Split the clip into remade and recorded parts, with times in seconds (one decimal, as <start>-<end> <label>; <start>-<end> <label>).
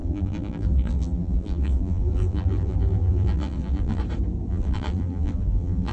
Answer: 0.0-4.0 remade; 4.0-4.5 recorded; 4.5-5.9 remade